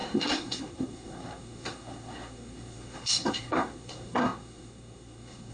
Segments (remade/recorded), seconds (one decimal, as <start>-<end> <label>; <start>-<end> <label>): 0.0-5.5 remade

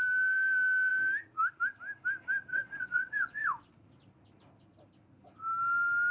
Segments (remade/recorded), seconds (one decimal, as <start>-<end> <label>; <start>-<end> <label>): 0.0-2.5 recorded; 2.5-3.7 remade; 3.7-6.1 recorded

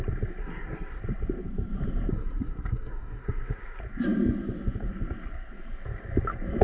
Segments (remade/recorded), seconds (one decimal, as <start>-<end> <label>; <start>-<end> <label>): 0.0-0.4 recorded; 0.4-1.0 remade; 1.0-2.1 recorded; 2.1-3.8 remade; 3.8-6.6 recorded

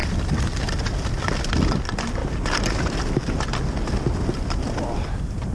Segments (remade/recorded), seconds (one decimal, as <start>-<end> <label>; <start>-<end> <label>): 0.0-5.5 recorded

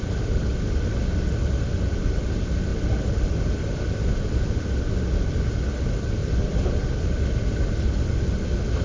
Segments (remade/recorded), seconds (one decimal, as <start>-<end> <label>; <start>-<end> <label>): 0.0-2.7 recorded; 2.7-4.2 remade; 4.2-6.2 recorded; 6.2-6.9 remade; 6.9-8.8 recorded

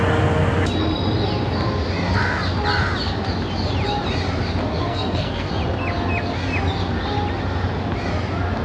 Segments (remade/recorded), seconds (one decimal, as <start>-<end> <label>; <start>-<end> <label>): 0.0-4.7 recorded; 4.7-5.5 remade; 5.5-8.6 recorded

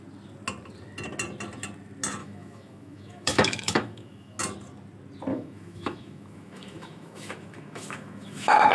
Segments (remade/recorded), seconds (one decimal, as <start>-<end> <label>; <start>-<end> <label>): 0.0-2.2 recorded; 2.2-4.4 remade; 4.4-5.3 recorded; 5.3-8.7 remade

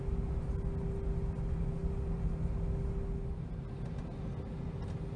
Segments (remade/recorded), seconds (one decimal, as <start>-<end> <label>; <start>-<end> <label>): 0.0-5.2 recorded